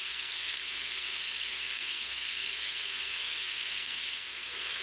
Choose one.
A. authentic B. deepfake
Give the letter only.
B